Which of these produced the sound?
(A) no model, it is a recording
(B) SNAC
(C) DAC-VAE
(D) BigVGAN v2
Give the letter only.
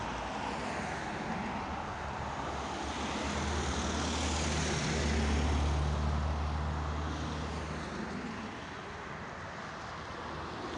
A